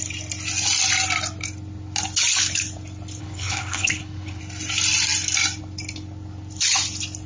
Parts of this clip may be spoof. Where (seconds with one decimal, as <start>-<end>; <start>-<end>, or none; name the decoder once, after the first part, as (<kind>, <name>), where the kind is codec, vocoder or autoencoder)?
3.2-4.4 (codec, HILCodec)